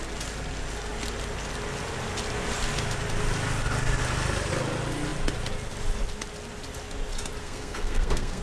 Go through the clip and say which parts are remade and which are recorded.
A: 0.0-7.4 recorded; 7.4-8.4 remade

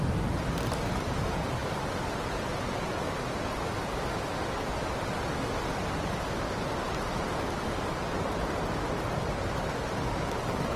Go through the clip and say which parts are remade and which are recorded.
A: 0.0-10.8 recorded

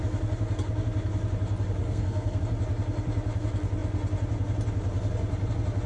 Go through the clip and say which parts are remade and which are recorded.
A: 0.0-1.8 recorded; 1.8-2.4 remade; 2.4-5.9 recorded

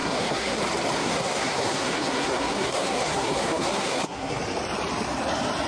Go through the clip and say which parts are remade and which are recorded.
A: 0.0-0.6 remade; 0.6-1.0 recorded; 1.0-4.4 remade; 4.4-5.7 recorded